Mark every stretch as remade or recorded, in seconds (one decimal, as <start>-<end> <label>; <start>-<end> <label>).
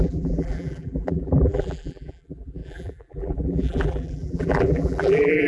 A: 0.0-5.5 remade